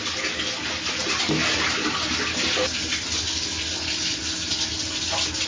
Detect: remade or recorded recorded